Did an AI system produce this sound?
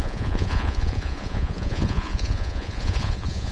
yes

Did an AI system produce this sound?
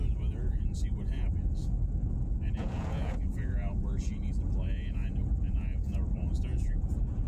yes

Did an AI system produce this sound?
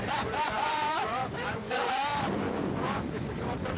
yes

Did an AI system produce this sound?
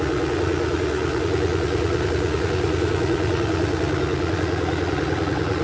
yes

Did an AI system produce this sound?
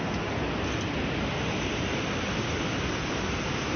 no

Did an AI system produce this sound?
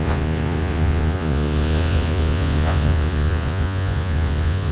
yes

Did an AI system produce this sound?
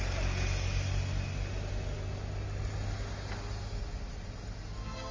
no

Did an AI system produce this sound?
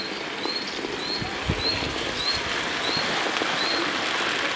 no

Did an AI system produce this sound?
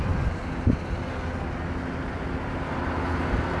no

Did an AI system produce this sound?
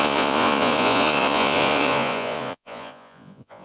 yes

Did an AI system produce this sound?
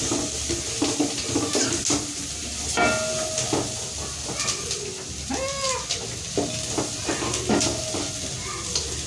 no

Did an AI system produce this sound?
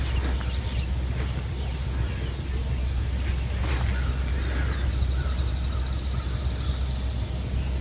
no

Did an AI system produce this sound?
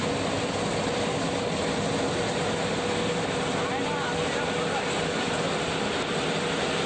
no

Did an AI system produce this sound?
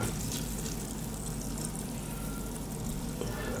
no